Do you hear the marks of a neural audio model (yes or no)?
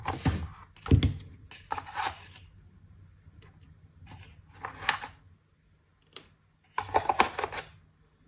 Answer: no